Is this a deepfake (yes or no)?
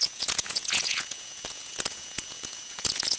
yes